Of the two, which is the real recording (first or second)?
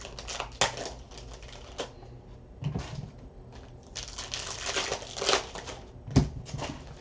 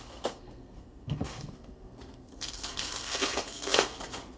first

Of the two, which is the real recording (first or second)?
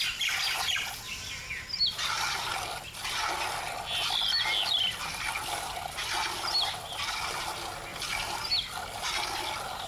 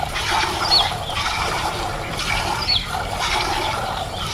first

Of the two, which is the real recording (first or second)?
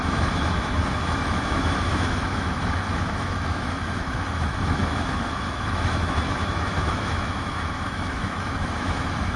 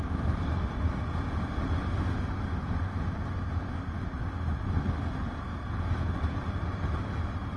second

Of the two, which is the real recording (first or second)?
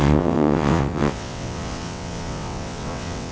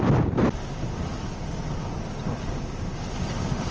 second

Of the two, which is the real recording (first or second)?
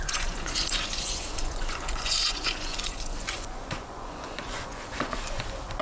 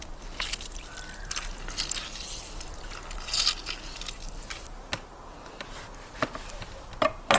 second